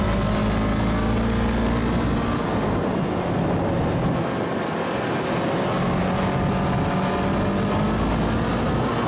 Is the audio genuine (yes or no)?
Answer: yes